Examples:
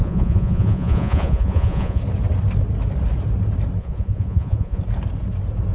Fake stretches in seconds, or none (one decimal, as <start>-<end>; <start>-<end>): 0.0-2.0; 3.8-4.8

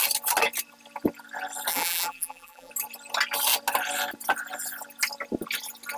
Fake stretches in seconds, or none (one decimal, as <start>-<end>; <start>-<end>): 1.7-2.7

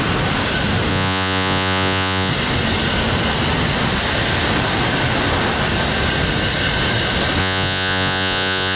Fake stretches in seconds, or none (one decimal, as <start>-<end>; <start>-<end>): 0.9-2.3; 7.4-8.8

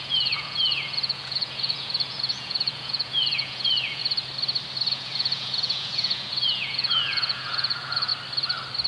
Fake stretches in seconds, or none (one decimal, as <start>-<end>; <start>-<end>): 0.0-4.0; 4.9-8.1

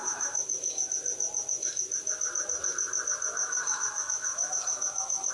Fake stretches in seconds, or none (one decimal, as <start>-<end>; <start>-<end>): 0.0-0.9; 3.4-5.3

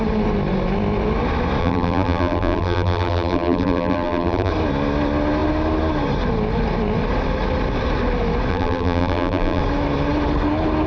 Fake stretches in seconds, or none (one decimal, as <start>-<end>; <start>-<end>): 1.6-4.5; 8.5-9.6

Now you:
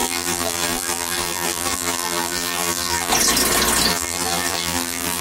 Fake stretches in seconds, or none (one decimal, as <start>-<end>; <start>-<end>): 0.0-3.1; 3.9-5.2